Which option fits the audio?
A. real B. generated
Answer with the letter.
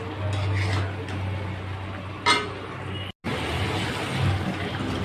A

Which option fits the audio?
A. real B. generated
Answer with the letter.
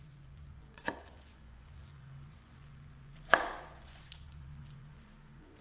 B